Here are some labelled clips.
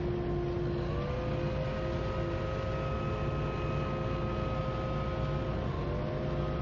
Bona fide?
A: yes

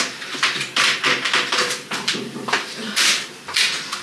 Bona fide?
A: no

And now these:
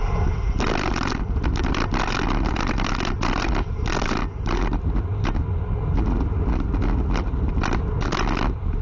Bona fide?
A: yes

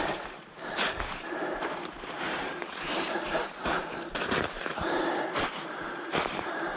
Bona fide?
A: no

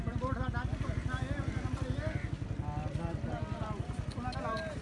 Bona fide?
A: yes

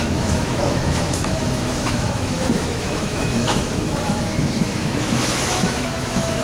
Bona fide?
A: no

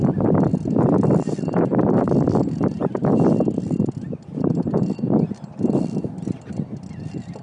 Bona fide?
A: no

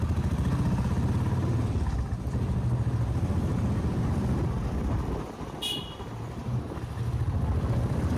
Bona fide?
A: yes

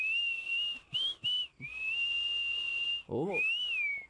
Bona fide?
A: yes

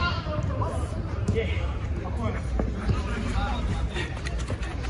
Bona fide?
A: no